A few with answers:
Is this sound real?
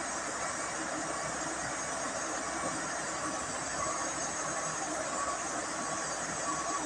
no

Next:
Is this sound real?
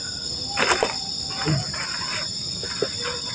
yes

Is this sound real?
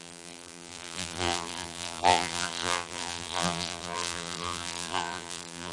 no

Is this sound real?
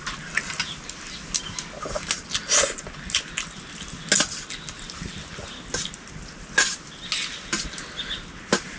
yes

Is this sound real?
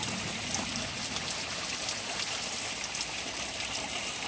yes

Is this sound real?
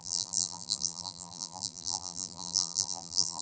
no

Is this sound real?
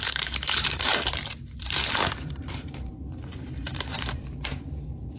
no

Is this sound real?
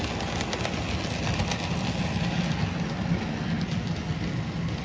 yes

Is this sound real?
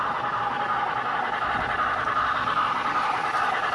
yes